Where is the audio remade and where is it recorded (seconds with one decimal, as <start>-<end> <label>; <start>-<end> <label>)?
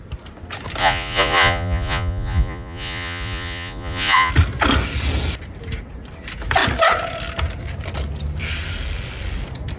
0.0-0.8 recorded; 0.8-4.3 remade; 4.3-9.8 recorded